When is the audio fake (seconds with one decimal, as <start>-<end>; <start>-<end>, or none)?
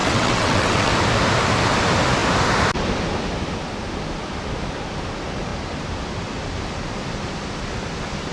0.0-0.9